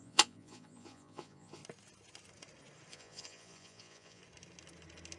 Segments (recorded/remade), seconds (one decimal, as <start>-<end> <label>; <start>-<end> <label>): 0.0-1.6 remade; 1.6-2.9 recorded; 2.9-4.2 remade; 4.2-5.2 recorded